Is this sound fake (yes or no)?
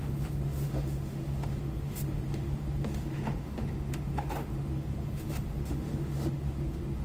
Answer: yes